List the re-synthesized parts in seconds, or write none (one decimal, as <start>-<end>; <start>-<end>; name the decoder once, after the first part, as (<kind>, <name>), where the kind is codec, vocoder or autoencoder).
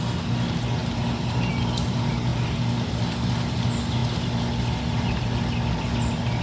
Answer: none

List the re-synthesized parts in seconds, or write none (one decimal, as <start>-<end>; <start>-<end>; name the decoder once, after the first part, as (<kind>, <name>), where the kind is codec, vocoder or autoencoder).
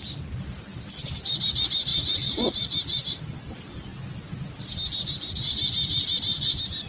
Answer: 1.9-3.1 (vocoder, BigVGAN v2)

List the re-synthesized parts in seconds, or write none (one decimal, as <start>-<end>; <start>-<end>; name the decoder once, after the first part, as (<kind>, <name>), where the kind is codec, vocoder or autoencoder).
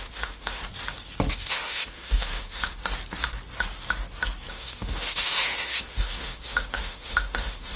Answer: 0.0-0.6 (autoencoder, DAC-VAE); 1.3-2.8; 4.5-7.8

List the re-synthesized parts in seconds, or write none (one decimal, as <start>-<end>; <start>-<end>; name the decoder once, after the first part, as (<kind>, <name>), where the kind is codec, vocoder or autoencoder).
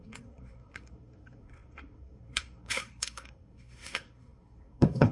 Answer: 0.0-5.1 (codec, SNAC)